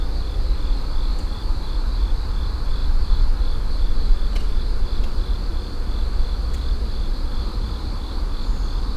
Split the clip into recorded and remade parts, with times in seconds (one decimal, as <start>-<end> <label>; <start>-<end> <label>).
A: 0.0-1.1 recorded; 1.1-1.7 remade; 1.7-7.3 recorded; 7.3-8.0 remade; 8.0-9.0 recorded